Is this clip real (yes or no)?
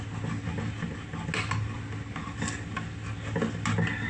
yes